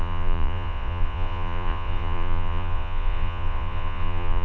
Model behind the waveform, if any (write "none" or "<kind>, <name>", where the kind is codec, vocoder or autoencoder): vocoder, Vocos